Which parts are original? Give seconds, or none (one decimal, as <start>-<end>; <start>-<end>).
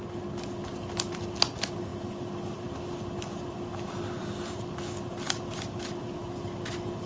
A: 0.0-7.1